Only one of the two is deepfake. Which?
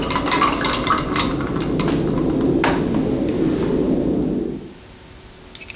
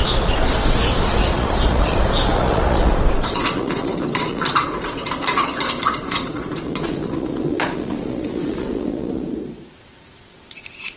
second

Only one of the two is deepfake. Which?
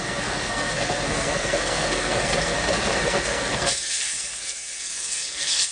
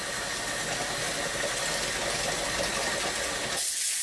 first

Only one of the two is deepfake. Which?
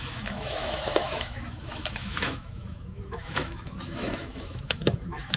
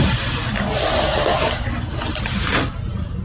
first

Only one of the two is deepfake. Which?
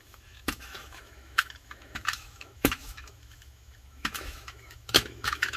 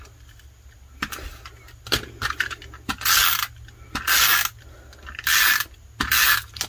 first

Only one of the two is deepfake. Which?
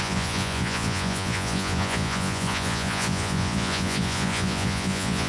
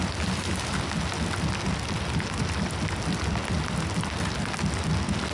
first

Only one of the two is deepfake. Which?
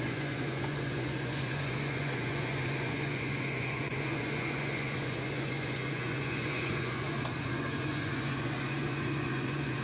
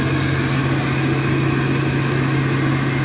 first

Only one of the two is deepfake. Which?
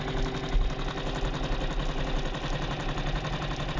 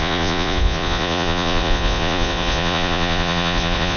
second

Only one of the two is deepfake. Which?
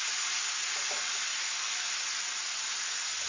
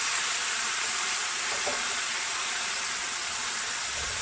second